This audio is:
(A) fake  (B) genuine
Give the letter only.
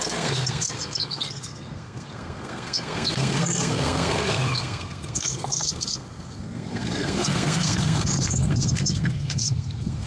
A